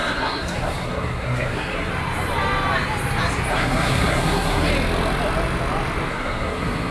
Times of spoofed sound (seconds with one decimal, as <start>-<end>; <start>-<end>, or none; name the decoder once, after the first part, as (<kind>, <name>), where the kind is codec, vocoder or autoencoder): 0.0-1.9 (codec, SNAC); 3.5-4.7; 6.1-6.9